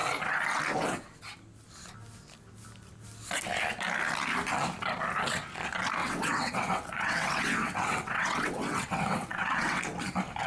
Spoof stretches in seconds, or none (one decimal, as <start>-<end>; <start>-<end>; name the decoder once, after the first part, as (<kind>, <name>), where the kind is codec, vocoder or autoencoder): 6.0-9.8 (vocoder, WaveNeXt)